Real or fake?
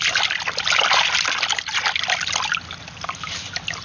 real